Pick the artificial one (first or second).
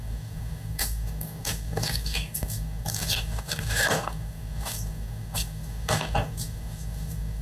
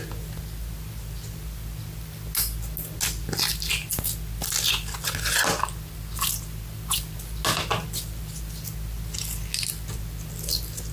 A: first